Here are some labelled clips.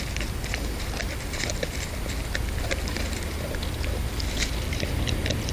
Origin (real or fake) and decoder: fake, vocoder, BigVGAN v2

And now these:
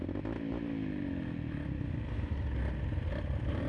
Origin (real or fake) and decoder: real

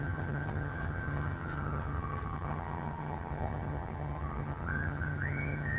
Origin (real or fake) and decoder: fake, vocoder, HiFi-GAN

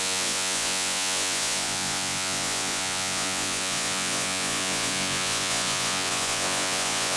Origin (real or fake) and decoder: fake, vocoder, Vocos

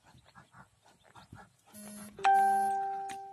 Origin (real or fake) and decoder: real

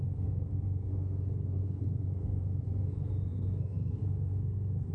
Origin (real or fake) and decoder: fake, codec, SNAC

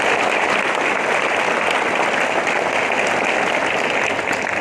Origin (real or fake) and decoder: real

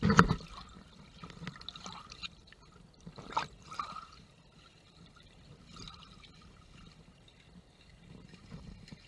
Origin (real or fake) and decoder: real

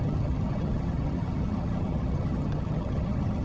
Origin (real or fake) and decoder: fake, vocoder, HiFi-GAN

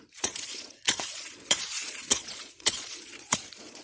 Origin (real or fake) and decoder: fake, vocoder, Vocos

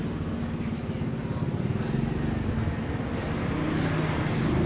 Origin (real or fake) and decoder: real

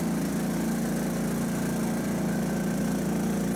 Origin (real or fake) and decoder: real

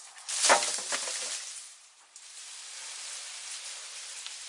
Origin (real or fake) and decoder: real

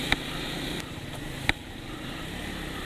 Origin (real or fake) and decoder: fake, vocoder, BigVGAN v2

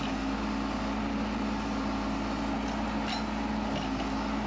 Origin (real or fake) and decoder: real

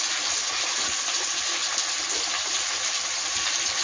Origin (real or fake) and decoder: real